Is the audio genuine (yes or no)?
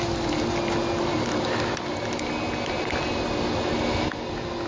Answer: yes